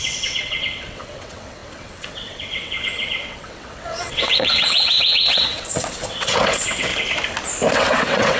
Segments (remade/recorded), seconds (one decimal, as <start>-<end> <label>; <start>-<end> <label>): 0.0-6.9 remade; 6.9-7.7 recorded; 7.7-8.4 remade